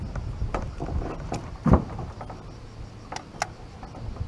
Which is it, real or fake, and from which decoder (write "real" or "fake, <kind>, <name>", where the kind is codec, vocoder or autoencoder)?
real